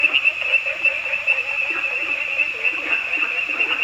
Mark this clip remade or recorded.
recorded